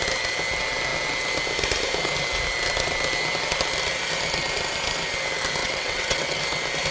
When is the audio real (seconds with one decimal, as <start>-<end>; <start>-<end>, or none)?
0.0-5.6; 6.4-6.9